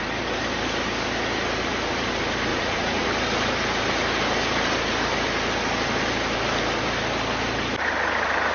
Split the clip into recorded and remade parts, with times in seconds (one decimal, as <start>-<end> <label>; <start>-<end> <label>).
0.0-2.5 recorded; 2.5-3.1 remade; 3.1-8.5 recorded